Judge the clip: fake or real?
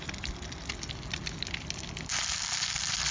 real